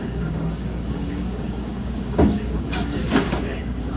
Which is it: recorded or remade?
remade